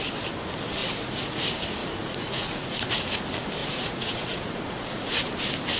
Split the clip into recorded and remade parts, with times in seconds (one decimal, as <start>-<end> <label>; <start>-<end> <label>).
0.0-0.8 recorded; 0.8-1.4 remade; 1.4-1.8 recorded; 1.8-2.9 remade; 2.9-3.6 recorded; 3.6-5.3 remade; 5.3-5.8 recorded